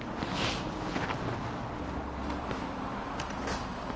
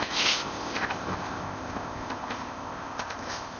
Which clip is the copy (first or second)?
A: second